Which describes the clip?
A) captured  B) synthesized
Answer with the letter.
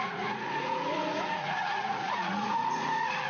B